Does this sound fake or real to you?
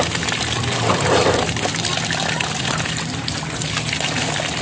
real